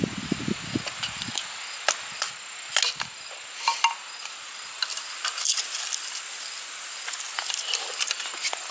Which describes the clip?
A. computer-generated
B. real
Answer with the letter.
B